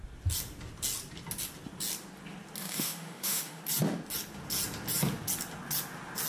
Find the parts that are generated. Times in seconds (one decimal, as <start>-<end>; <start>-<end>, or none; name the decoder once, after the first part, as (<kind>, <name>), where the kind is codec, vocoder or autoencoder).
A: 2.6-3.6 (autoencoder, DAC-VAE)